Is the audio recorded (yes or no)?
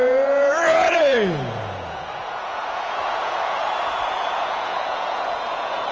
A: no